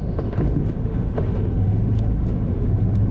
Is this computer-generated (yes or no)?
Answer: yes